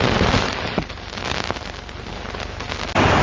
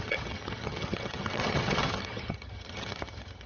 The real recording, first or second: first